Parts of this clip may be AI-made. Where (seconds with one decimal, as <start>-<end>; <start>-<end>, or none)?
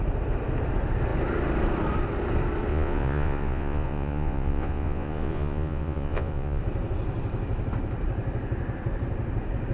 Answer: 2.7-6.6